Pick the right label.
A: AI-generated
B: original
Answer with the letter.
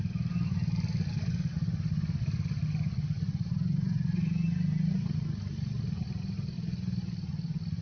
B